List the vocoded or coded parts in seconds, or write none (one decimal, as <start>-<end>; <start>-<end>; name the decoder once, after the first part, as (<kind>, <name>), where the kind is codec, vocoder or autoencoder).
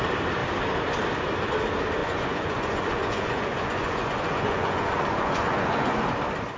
2.0-6.0 (vocoder, Vocos)